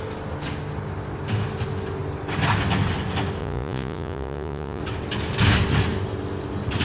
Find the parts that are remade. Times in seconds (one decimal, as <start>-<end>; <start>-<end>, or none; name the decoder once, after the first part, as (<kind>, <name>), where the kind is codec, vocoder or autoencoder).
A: 3.4-4.8 (vocoder, Vocos)